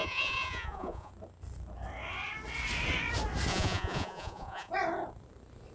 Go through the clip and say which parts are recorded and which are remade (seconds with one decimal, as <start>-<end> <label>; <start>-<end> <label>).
0.0-1.1 remade; 1.1-3.5 recorded; 3.5-4.7 remade; 4.7-5.7 recorded